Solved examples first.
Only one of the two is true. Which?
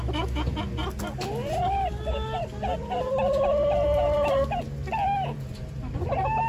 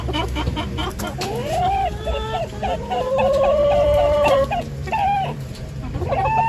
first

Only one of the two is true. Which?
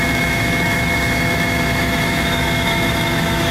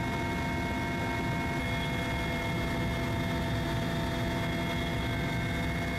second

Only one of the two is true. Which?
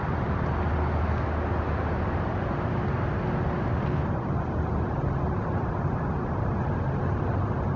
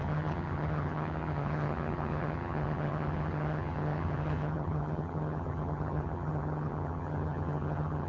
first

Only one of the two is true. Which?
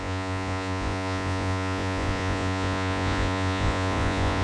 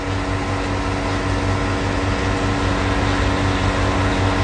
second